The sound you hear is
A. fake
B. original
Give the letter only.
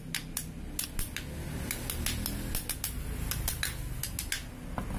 B